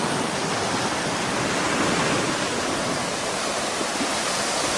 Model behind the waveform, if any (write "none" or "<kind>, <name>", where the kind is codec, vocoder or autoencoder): none